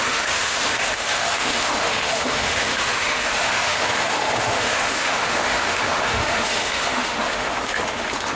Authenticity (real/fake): fake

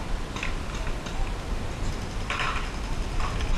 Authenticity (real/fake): real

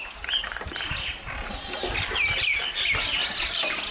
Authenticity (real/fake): real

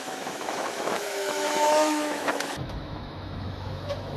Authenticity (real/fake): fake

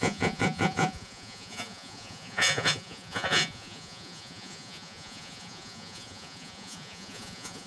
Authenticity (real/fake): fake